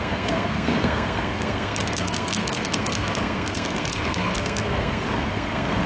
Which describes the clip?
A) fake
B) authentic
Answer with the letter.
A